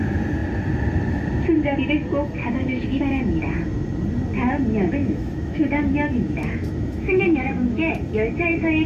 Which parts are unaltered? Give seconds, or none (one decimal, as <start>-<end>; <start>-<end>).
0.0-2.4; 3.1-5.0; 7.9-8.9